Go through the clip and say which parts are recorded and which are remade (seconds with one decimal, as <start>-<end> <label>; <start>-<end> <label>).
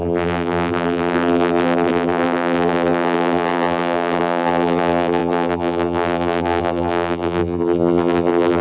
0.0-8.6 remade